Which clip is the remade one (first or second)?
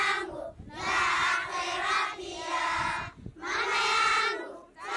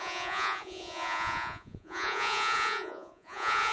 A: second